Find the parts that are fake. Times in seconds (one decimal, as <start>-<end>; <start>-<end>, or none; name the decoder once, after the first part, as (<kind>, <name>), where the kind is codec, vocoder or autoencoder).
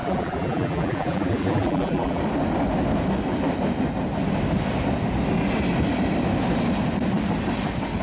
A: 0.0-2.2 (vocoder, BigVGAN v2)